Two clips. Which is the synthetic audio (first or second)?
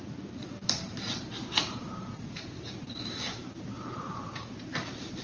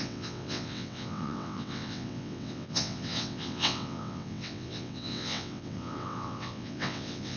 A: second